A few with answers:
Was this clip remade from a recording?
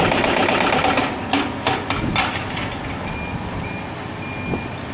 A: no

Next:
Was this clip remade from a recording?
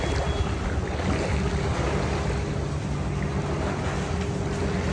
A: no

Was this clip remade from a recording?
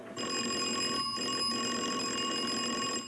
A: no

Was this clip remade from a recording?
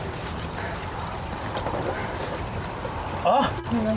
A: no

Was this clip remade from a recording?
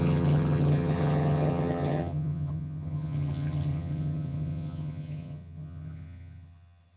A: yes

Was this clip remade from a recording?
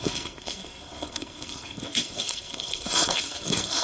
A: yes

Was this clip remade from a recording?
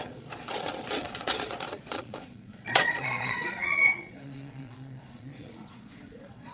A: yes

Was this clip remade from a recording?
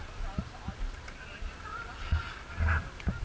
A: no